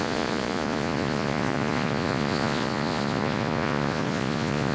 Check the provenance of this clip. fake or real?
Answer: fake